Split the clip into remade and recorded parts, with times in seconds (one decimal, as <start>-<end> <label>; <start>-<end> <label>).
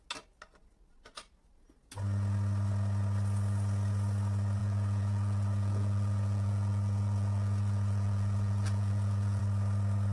0.0-4.6 recorded; 4.6-9.4 remade; 9.4-10.1 recorded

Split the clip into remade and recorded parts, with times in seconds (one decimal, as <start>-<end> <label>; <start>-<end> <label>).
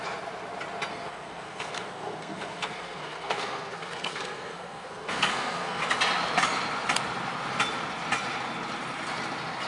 0.0-0.9 recorded; 0.9-5.8 remade; 5.8-9.7 recorded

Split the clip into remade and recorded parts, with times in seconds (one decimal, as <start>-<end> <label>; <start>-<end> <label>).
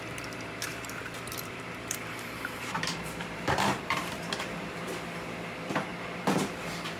0.0-0.7 recorded; 0.7-4.9 remade; 4.9-5.9 recorded; 5.9-7.0 remade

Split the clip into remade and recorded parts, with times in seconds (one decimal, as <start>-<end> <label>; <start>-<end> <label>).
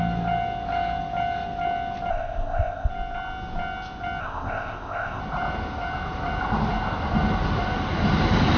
0.0-2.1 recorded; 2.1-2.9 remade; 2.9-4.2 recorded; 4.2-5.2 remade; 5.2-8.6 recorded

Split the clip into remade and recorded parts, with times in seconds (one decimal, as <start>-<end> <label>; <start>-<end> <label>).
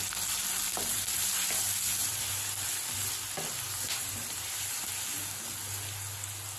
0.0-0.7 recorded; 0.7-1.6 remade; 1.6-2.0 recorded; 2.0-4.8 remade; 4.8-6.6 recorded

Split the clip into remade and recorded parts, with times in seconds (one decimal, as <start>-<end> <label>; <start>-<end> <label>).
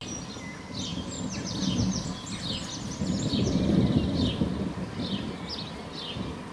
0.0-6.5 recorded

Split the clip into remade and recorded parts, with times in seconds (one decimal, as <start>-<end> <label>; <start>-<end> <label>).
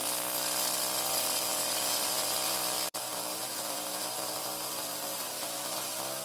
0.0-1.1 recorded; 1.1-6.2 remade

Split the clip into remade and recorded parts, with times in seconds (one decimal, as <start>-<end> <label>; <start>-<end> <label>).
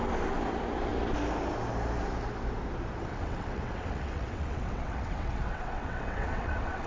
0.0-3.1 recorded; 3.1-6.9 remade